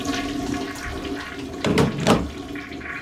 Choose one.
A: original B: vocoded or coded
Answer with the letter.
A